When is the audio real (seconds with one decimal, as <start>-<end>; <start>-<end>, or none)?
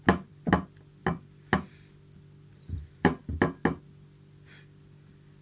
0.0-2.5; 3.2-5.4